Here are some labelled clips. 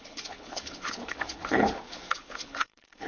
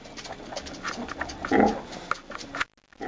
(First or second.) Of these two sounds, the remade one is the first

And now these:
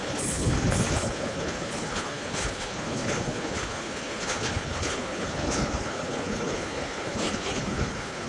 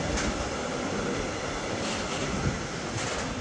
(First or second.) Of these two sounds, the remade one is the first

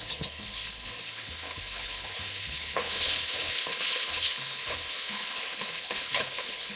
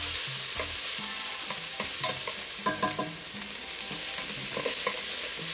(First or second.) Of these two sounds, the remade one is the first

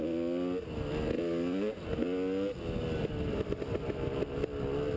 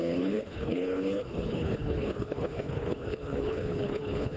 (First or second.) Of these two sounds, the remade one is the second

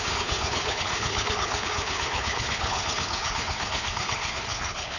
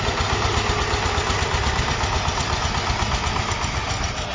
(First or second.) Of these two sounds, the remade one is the first